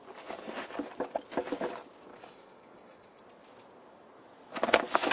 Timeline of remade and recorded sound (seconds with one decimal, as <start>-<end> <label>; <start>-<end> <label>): 0.0-2.1 recorded; 2.1-3.2 remade; 3.2-5.1 recorded